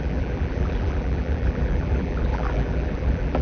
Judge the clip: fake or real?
fake